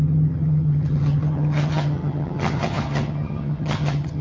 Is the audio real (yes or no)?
no